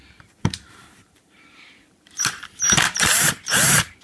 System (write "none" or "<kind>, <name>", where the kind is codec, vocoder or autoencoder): vocoder, BigVGAN v2